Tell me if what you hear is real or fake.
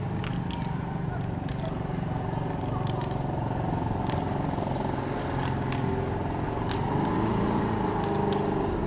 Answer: real